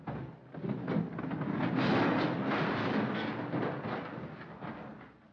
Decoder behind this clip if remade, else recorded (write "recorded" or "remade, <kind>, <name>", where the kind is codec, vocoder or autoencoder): recorded